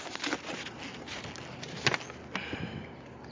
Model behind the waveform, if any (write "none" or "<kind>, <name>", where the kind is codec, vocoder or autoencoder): none